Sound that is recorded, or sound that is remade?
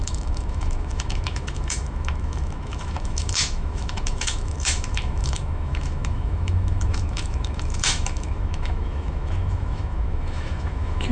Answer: remade